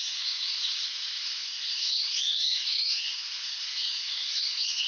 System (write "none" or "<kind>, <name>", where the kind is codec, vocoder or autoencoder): codec, SNAC